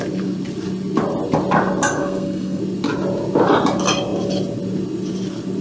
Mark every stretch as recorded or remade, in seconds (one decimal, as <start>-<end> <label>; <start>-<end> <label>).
0.0-2.0 recorded; 2.0-2.6 remade; 2.6-5.6 recorded